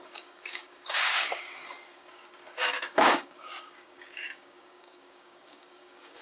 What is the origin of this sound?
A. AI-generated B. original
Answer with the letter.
A